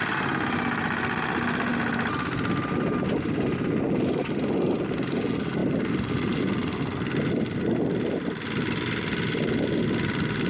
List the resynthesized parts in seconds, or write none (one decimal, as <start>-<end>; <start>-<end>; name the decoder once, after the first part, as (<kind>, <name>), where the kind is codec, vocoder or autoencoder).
5.6-6.4 (vocoder, BigVGAN v2)